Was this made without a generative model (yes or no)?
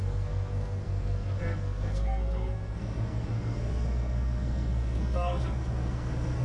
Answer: no